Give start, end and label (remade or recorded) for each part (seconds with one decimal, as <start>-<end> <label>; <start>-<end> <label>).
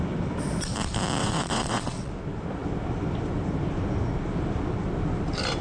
0.0-1.2 recorded; 1.2-2.1 remade; 2.1-5.6 recorded